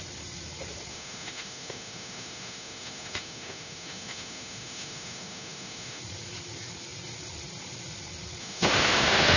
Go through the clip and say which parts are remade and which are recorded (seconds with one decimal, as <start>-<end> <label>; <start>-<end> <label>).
0.0-0.9 recorded; 0.9-6.0 remade; 6.0-8.4 recorded; 8.4-9.4 remade